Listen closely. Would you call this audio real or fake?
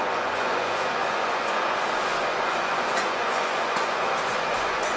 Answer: fake